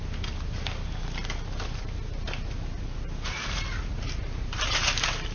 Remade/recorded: recorded